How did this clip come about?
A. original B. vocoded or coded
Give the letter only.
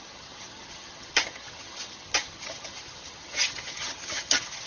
B